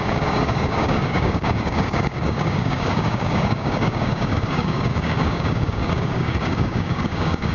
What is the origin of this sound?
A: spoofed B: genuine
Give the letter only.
A